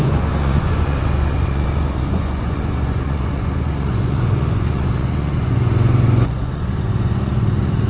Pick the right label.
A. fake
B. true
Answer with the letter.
A